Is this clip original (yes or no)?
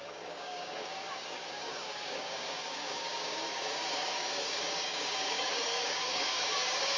no